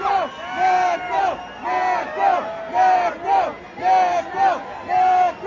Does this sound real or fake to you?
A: real